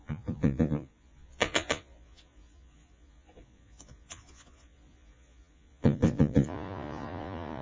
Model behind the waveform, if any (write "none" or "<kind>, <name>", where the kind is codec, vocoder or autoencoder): vocoder, Vocos